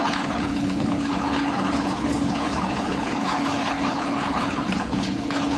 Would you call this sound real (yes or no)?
no